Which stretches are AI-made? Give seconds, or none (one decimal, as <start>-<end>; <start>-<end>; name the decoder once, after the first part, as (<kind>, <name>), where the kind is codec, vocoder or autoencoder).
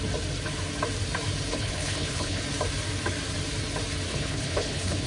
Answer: 1.5-2.4 (codec, HILCodec); 4.1-5.1